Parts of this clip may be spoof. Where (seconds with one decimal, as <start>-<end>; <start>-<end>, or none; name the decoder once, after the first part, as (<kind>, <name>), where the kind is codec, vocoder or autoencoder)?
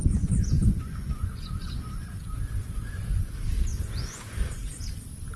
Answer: 0.0-3.2 (vocoder, Vocos); 3.7-4.8